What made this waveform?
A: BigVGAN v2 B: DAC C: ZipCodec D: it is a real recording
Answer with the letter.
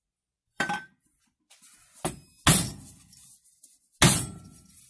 D